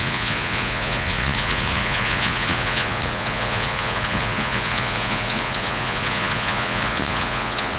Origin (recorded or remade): remade